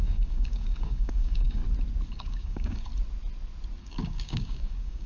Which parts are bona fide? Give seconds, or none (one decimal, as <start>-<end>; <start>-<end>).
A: 1.6-2.1; 2.9-3.8